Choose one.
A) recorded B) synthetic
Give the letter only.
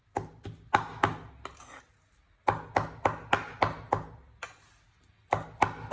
A